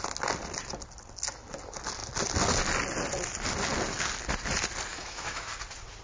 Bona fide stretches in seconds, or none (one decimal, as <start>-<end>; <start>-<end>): 0.0-4.9; 5.5-6.0